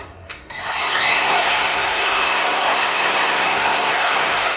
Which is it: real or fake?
fake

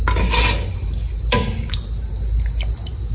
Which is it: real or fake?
real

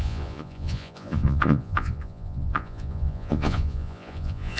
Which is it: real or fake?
fake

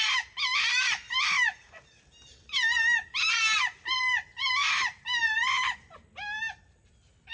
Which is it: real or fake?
real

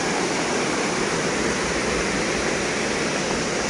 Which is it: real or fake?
real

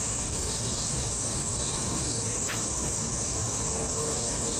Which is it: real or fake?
fake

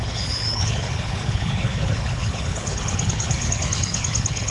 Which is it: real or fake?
fake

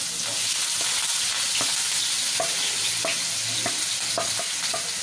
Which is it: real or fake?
real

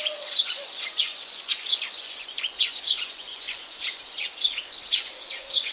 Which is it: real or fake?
fake